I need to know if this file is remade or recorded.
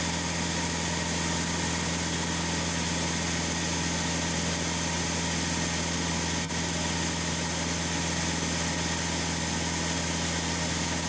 recorded